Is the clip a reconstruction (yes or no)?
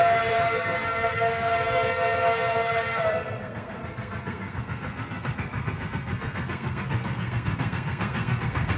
yes